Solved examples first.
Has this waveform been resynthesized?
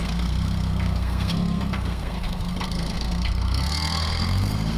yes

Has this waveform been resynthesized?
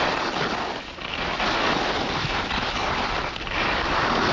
no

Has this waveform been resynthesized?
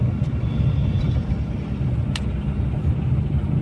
no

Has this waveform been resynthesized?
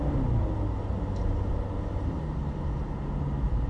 no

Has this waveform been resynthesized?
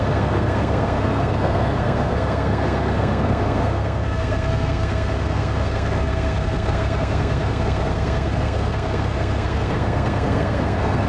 yes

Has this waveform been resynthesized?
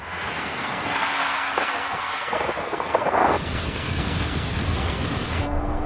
yes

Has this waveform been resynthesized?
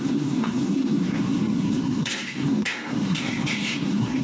yes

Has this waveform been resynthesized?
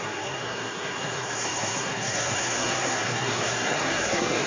yes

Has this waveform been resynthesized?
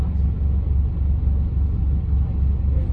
no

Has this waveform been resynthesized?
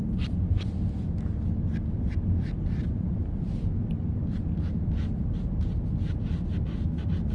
no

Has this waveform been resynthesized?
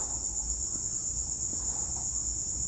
no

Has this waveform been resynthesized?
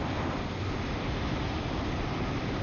no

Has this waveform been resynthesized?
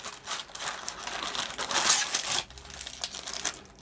no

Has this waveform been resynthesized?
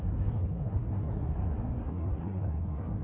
yes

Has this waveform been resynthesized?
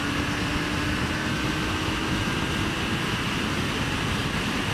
no